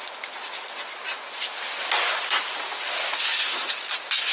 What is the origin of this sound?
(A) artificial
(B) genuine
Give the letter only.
B